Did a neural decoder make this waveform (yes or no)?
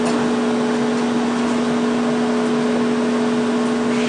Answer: no